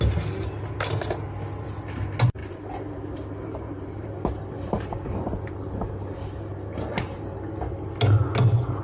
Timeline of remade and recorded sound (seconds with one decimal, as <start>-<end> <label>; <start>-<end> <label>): 0.0-2.4 recorded; 2.4-7.4 remade; 7.4-8.8 recorded